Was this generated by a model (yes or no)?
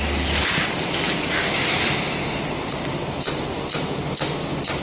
no